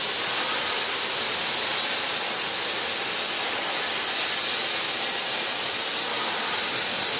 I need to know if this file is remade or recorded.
recorded